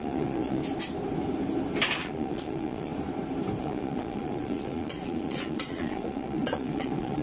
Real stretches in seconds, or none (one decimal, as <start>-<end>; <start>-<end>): 0.6-2.0; 2.9-3.6